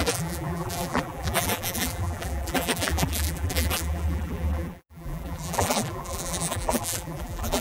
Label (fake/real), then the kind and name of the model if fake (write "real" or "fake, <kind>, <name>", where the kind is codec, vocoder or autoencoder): fake, vocoder, BigVGAN v2